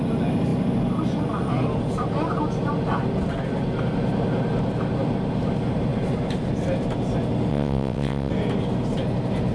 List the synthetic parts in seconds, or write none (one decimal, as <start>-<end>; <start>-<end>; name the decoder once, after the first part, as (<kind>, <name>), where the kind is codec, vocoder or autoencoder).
7.5-8.3 (vocoder, WaveNeXt)